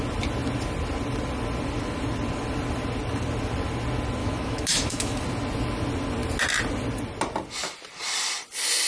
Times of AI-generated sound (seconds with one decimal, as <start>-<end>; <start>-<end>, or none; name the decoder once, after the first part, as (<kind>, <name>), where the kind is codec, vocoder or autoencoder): 4.2-5.2 (autoencoder, DAC-VAE)